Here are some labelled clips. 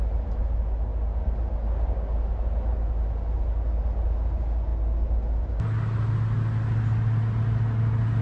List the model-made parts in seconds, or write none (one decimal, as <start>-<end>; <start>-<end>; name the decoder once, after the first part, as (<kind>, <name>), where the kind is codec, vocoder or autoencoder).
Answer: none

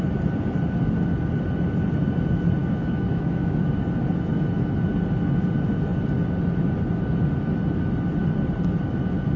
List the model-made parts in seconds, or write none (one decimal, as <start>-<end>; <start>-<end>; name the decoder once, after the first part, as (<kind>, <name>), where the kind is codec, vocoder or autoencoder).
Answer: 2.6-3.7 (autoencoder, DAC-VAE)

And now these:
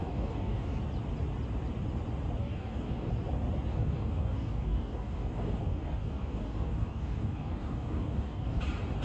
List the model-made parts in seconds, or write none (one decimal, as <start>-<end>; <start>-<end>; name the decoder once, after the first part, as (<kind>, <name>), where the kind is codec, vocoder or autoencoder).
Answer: 0.0-0.8 (codec, DAC); 2.4-3.1; 3.7-8.6